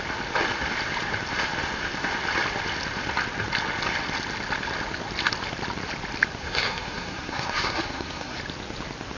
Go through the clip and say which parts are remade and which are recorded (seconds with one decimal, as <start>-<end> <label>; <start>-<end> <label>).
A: 0.0-6.4 recorded; 6.4-8.4 remade; 8.4-9.2 recorded